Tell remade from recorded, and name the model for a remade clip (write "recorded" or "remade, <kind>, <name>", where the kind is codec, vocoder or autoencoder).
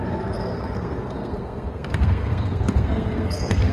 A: remade, codec, SNAC